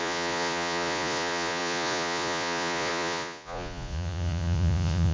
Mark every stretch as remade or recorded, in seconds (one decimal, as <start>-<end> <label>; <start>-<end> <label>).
0.0-5.1 remade